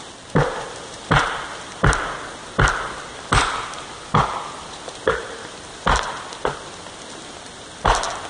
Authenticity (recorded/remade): recorded